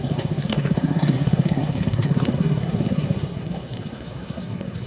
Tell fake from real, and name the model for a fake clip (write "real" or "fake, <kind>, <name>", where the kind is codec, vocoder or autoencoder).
fake, codec, SNAC